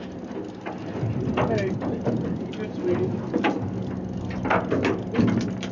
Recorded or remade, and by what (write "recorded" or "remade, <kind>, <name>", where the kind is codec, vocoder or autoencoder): recorded